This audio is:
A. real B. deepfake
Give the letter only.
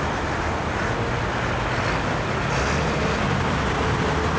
A